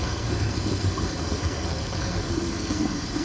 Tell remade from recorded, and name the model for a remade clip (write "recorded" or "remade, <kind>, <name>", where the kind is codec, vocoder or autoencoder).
remade, codec, SNAC